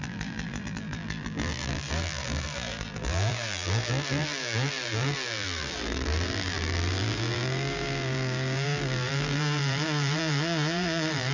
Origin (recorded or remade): remade